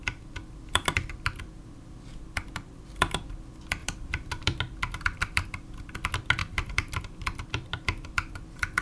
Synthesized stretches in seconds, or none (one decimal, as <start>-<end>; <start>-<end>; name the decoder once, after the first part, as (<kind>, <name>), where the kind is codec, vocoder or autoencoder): 3.8-4.6 (vocoder, BigVGAN v2); 6.4-7.0